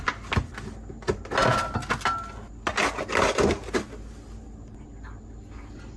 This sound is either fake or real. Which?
real